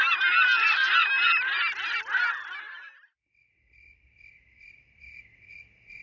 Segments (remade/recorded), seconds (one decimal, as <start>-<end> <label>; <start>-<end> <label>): 0.0-6.0 recorded